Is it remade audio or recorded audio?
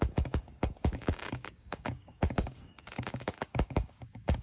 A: remade